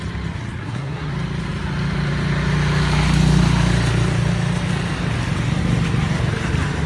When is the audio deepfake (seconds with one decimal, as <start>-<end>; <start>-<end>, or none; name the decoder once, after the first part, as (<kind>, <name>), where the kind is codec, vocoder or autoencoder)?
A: 0.6-1.1 (codec, SNAC)